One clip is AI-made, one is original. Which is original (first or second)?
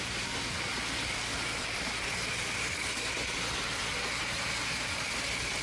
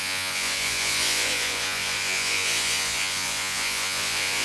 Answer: first